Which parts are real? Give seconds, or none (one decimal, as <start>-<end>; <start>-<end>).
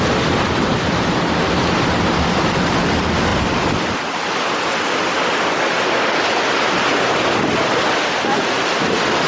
0.0-9.3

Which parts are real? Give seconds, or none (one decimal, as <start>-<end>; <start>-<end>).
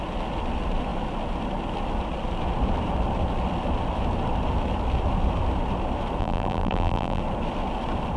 0.0-6.2; 7.2-8.2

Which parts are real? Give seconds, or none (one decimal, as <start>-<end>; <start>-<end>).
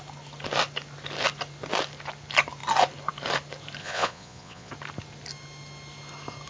0.0-3.8; 4.7-6.5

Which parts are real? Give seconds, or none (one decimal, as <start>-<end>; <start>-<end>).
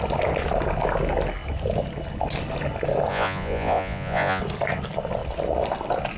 0.0-3.1; 4.4-6.2